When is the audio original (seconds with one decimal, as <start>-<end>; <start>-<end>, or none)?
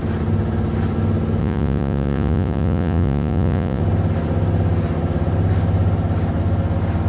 0.0-1.4; 3.8-7.1